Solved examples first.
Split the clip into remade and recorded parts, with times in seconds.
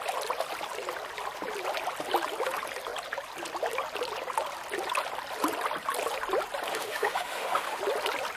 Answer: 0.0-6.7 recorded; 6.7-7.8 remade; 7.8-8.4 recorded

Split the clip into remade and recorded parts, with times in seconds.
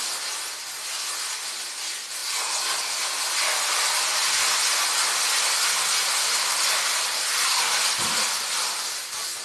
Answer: 0.0-9.4 recorded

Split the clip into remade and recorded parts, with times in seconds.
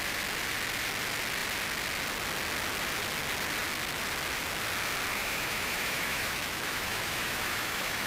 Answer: 0.0-5.1 recorded; 5.1-8.1 remade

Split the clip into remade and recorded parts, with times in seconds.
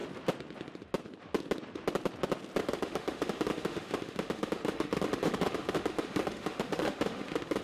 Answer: 0.0-2.6 recorded; 2.6-7.6 remade